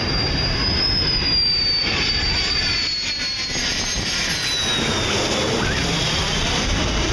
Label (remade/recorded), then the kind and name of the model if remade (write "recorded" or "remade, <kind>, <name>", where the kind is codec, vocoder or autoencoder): recorded